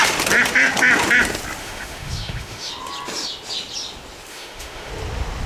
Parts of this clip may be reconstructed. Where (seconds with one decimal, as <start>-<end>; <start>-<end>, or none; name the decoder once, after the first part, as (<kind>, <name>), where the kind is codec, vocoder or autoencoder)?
1.6-2.7 (autoencoder, DAC-VAE); 4.3-4.9